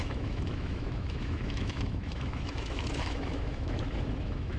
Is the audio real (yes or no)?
no